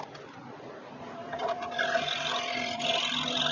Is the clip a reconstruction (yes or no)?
no